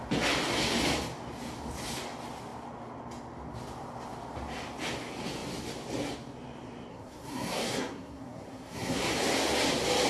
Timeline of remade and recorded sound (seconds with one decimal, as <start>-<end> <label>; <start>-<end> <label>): 0.0-6.9 recorded; 6.9-9.1 remade; 9.1-10.1 recorded